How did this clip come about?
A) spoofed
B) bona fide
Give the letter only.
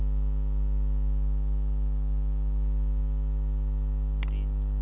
B